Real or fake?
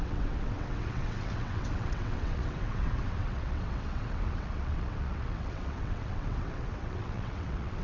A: fake